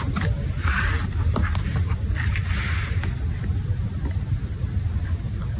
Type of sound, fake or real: real